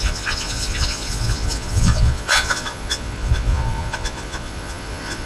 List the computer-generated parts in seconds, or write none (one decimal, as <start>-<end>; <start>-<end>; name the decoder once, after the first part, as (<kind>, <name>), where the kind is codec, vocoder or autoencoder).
0.0-5.3 (vocoder, Vocos)